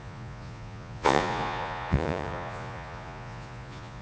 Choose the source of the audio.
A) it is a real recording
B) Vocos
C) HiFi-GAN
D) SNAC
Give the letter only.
B